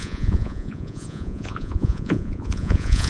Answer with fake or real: fake